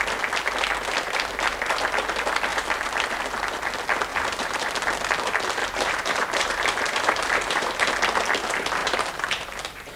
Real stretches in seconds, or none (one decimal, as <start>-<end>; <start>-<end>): 0.0-2.5; 3.2-4.1; 4.7-5.6; 7.9-8.8; 9.5-10.0